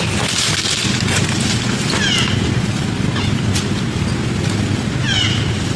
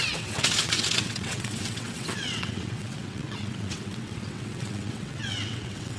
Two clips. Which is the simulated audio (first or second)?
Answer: second